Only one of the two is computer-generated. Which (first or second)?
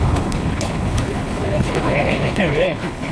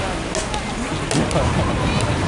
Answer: first